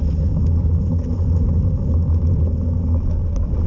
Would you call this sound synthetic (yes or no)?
no